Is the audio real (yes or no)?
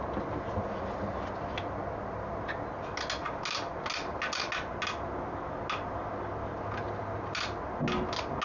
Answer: yes